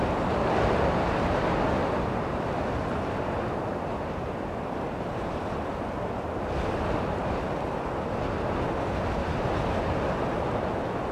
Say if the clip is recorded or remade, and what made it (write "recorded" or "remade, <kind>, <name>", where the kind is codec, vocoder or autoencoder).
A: recorded